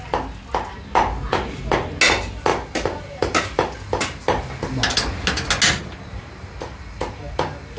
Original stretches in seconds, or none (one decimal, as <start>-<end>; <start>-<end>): 0.0-7.8